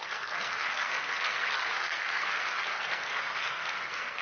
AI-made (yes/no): yes